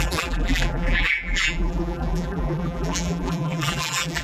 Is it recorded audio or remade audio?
remade